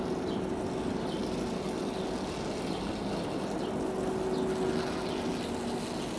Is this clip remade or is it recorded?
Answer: recorded